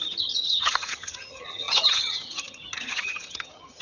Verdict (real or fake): fake